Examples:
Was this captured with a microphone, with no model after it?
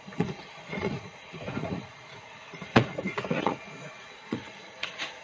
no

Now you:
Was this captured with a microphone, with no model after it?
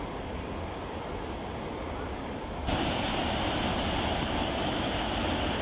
yes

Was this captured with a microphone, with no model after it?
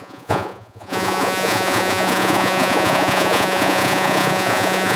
no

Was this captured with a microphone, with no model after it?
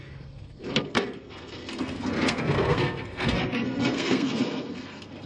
no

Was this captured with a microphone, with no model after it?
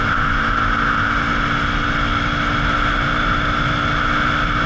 yes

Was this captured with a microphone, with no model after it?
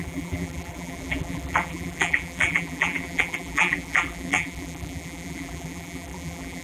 no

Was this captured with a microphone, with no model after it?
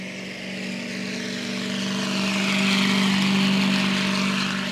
yes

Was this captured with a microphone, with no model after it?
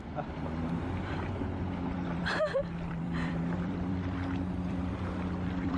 no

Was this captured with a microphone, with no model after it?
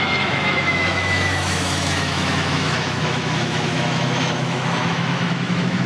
no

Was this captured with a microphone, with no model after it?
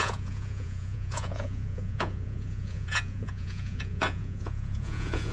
no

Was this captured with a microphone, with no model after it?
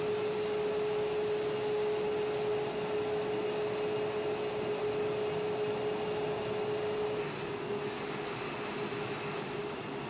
yes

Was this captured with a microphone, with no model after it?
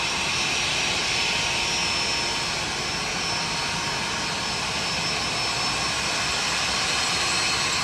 yes